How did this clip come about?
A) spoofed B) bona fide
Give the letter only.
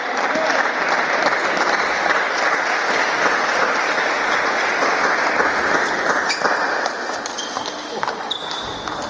B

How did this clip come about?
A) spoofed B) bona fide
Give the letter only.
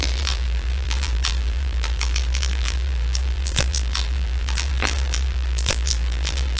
A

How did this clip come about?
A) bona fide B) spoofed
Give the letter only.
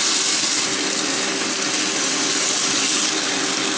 A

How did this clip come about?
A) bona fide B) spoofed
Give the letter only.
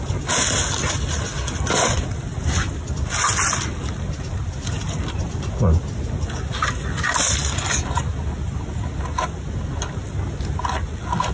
A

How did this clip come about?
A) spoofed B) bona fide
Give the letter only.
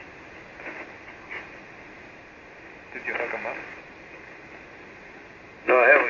B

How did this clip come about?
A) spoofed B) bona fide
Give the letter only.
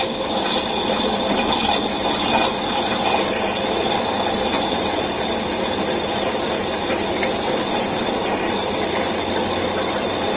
B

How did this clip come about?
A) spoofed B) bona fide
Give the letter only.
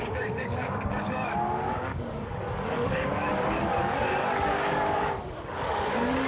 A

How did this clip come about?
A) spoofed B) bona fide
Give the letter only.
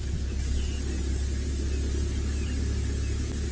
B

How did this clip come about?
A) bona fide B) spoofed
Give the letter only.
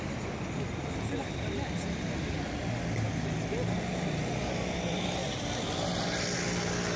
A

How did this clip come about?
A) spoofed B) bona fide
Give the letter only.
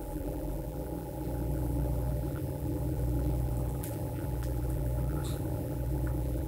A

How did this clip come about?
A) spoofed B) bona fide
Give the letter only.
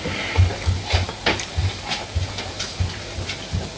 B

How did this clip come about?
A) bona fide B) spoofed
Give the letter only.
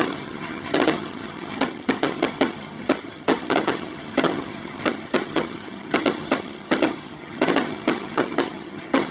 B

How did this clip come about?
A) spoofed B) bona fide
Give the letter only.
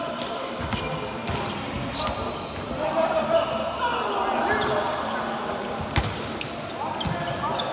B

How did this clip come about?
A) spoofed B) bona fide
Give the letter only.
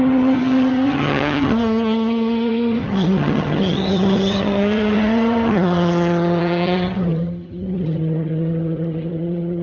A